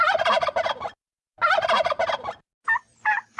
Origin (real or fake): real